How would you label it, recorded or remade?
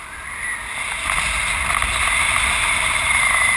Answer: recorded